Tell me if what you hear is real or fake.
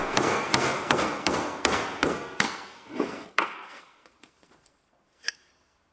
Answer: fake